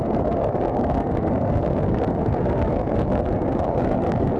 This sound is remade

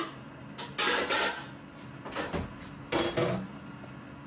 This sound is recorded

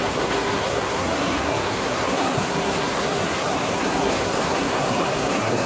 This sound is remade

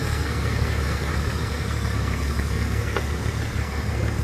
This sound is remade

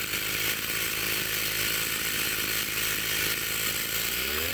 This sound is recorded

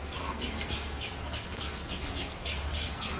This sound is remade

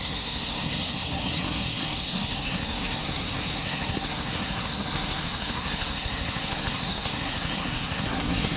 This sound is remade